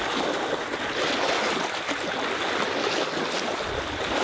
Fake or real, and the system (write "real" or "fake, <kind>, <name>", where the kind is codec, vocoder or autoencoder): real